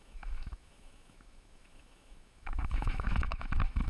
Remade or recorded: remade